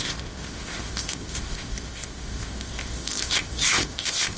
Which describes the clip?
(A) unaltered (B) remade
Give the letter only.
B